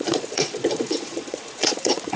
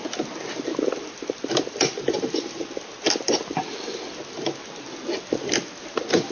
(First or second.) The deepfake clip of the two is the first